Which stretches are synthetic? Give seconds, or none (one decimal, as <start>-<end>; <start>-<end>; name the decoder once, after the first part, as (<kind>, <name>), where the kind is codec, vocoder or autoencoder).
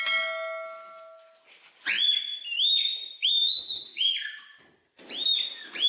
2.3-5.9 (vocoder, BigVGAN v2)